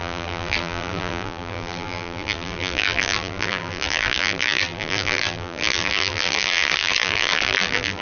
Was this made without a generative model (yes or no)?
no